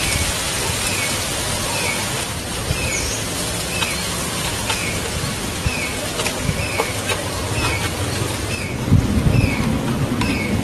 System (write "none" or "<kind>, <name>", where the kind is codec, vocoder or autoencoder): none